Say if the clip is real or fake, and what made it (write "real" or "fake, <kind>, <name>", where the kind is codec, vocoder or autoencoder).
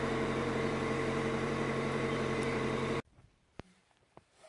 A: fake, vocoder, BigVGAN v2